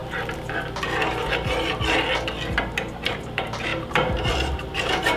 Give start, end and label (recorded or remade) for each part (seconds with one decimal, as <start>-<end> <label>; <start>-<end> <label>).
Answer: 0.0-3.1 recorded; 3.1-5.2 remade